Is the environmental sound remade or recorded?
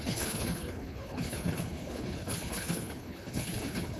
remade